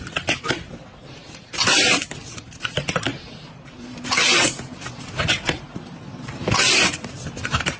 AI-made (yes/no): yes